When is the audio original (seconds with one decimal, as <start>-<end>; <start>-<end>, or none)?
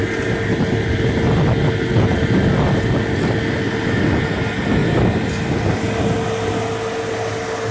0.0-7.7